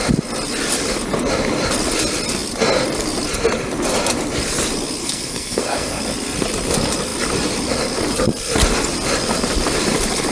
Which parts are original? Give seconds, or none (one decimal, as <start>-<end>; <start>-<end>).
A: 0.0-5.0; 6.0-10.3